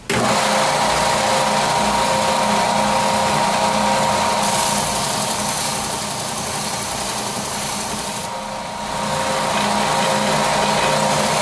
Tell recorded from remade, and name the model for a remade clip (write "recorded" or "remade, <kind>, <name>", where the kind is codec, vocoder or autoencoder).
recorded